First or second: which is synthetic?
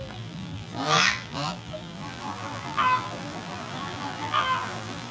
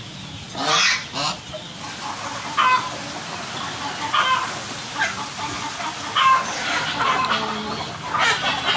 first